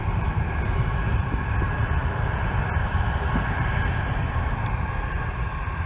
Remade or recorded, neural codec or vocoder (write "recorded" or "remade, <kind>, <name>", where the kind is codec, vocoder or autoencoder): remade, vocoder, BigVGAN v2